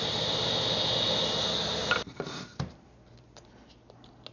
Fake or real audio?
real